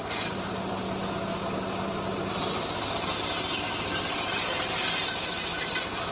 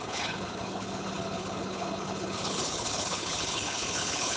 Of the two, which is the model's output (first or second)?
second